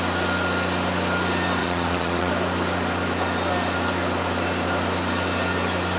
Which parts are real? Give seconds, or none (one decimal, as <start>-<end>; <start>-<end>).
0.0-1.6; 2.3-6.0